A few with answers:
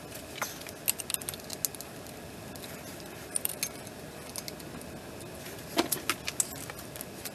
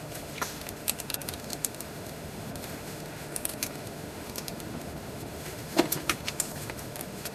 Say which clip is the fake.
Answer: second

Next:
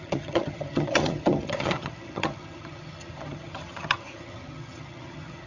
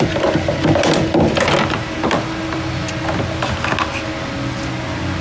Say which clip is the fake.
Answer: first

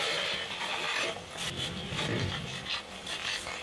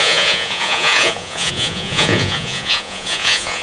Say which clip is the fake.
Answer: second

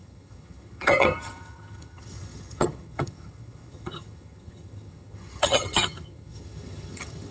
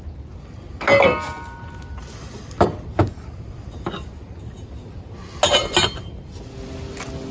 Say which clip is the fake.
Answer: first